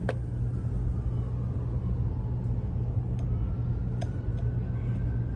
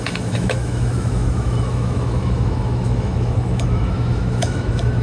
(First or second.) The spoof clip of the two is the second